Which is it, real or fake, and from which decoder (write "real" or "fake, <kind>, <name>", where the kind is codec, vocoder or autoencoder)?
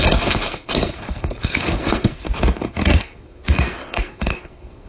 fake, codec, SNAC